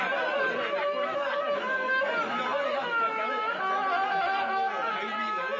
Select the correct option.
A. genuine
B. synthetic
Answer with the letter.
A